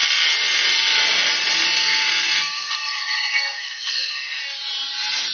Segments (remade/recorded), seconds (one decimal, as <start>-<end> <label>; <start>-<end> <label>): 0.0-1.8 recorded; 1.8-4.4 remade; 4.4-5.3 recorded